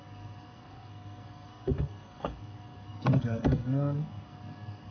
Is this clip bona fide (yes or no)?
no